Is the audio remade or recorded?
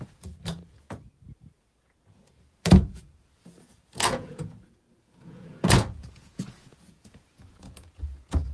remade